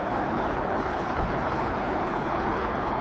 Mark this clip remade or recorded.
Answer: remade